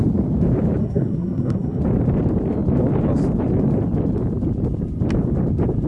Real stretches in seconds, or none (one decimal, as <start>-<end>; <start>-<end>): 0.0-0.8; 1.8-5.9